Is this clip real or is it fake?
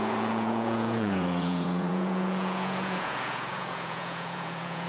fake